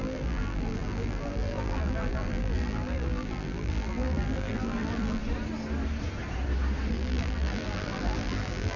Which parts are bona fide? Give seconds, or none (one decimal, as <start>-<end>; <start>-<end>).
5.2-6.9